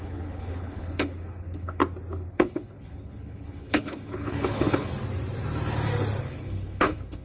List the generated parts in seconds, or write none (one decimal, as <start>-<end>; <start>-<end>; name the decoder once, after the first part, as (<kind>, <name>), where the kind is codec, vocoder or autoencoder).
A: 0.0-1.8 (codec, HILCodec); 2.3-4.9; 6.2-7.2